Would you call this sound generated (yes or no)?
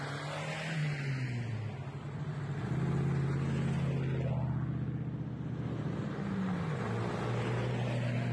no